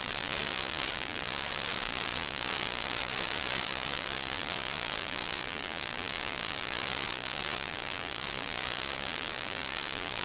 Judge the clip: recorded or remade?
remade